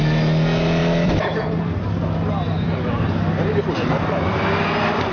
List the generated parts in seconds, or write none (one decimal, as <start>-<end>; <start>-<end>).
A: 0.8-3.9